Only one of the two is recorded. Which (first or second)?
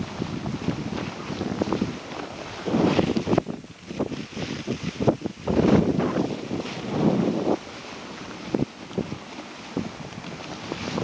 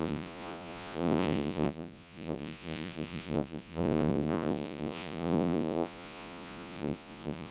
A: first